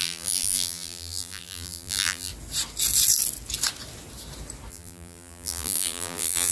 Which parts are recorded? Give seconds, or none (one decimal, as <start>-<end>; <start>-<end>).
2.3-4.7